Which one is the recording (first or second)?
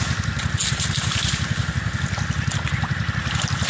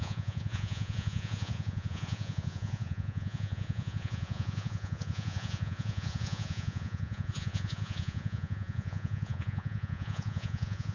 first